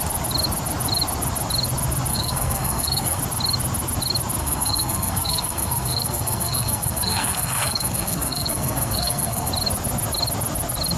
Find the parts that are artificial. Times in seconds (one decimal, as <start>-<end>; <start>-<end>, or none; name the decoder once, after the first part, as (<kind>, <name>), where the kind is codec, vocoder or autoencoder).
2.1-3.2 (codec, SNAC); 4.4-9.5